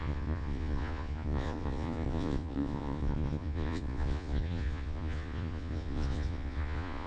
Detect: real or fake fake